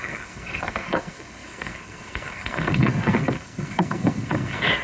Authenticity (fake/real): fake